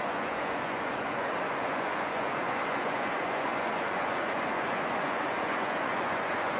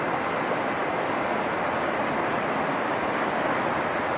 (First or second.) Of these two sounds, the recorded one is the second